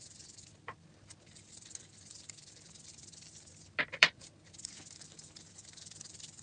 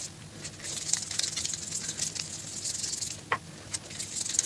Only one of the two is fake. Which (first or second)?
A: first